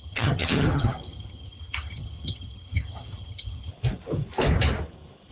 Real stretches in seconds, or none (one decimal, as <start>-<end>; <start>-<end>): 3.7-5.3

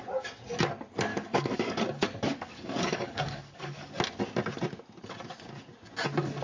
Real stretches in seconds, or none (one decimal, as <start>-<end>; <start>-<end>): 0.0-1.1; 1.8-2.3; 3.9-6.4

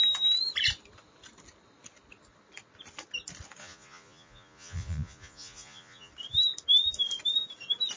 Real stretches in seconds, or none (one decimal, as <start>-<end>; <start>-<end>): 0.0-3.6; 6.1-8.0

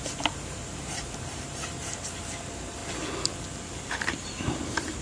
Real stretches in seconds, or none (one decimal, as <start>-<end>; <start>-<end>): 2.8-4.0